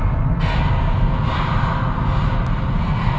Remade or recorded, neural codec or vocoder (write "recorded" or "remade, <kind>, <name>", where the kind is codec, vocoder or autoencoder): recorded